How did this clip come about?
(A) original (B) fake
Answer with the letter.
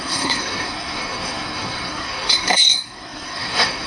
B